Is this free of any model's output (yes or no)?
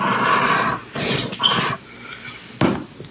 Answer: yes